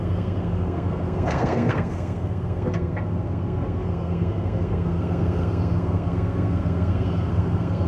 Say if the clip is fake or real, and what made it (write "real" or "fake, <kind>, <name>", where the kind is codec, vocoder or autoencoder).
fake, codec, SNAC